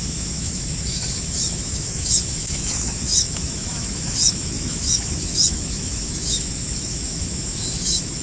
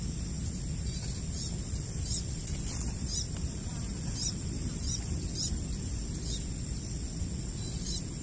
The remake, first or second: first